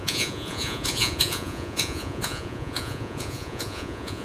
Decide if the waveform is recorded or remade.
remade